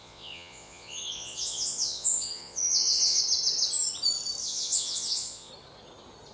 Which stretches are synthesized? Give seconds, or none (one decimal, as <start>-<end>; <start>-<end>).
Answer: 0.0-3.2; 4.4-5.5

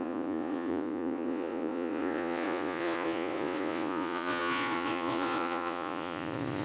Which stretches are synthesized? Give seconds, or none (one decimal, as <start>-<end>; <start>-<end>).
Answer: 0.0-6.6

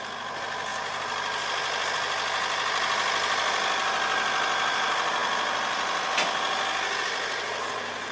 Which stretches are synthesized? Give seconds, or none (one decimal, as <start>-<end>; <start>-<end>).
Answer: none

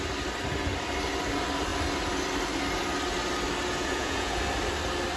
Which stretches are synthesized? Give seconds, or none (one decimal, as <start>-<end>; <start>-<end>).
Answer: 3.7-4.4

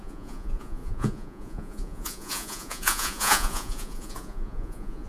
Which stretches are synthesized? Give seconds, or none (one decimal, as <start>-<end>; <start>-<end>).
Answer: 0.0-5.1

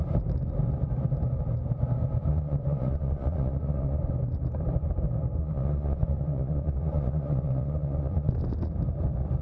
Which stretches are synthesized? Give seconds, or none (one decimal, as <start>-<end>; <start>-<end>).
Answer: 2.3-4.1; 5.4-8.3

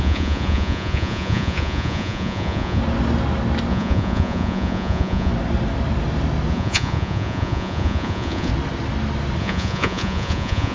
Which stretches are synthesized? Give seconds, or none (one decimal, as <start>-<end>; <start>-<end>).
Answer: 0.0-2.8; 3.7-5.3; 6.5-8.5; 9.4-10.7